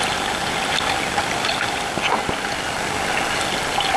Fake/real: real